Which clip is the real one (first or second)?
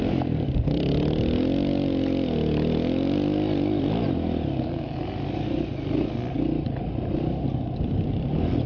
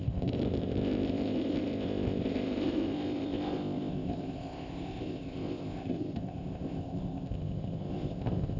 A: first